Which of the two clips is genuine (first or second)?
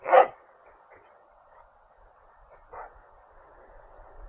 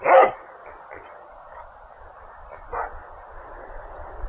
second